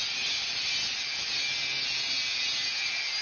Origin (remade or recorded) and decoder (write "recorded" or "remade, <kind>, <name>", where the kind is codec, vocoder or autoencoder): recorded